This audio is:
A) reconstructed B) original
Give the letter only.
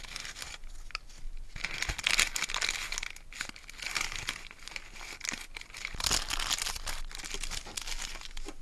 B